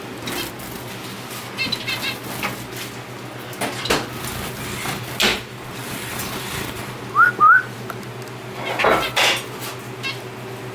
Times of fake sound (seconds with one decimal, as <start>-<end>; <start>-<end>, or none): 5.3-6.8